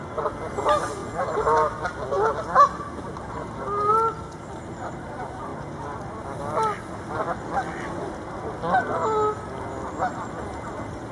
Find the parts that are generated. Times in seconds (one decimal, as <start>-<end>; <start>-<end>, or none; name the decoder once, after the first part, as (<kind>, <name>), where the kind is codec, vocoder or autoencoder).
none